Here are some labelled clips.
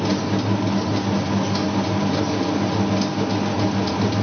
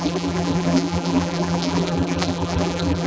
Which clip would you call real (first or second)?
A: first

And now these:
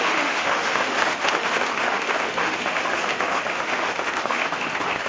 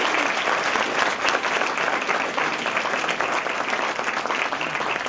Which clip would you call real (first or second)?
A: second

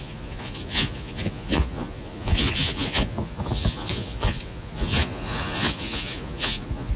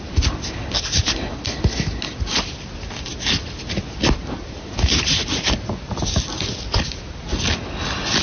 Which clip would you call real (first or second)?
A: second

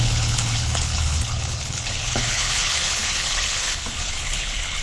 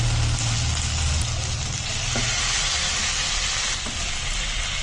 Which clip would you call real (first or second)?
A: second